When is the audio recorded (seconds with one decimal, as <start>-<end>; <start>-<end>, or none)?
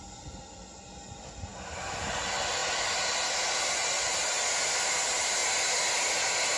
0.0-6.6